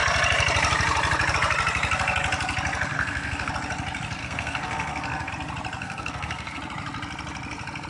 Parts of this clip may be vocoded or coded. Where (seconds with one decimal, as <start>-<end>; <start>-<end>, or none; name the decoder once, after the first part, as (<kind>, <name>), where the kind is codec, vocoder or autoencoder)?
2.9-3.5 (codec, SNAC); 4.2-5.3; 5.8-6.6